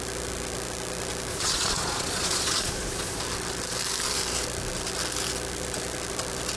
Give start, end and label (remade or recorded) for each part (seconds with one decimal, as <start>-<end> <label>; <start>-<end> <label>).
0.0-1.3 recorded; 1.3-3.2 remade; 3.2-6.6 recorded